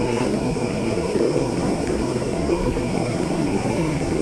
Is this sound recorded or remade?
remade